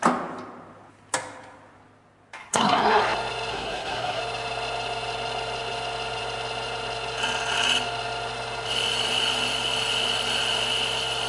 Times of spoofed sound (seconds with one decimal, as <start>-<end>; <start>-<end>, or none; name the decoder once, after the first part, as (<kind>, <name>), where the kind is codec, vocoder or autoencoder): 2.4-3.0 (codec, SNAC); 3.5-4.2